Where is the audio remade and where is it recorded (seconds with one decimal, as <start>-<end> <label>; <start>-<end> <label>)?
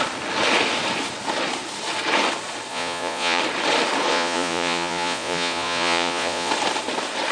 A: 0.0-2.7 recorded; 2.7-3.4 remade; 3.4-4.1 recorded; 4.1-6.5 remade; 6.5-7.3 recorded